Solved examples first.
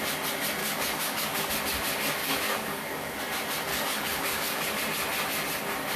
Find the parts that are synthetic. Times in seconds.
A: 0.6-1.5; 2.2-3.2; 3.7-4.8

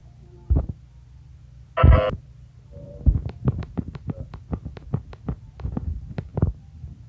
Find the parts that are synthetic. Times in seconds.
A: none

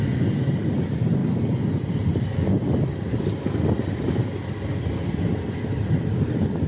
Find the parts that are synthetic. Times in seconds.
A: none

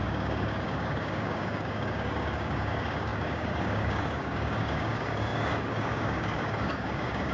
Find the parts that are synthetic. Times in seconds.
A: 0.0-7.3

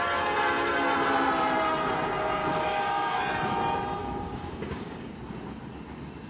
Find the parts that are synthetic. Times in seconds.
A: 2.4-3.2; 4.0-5.1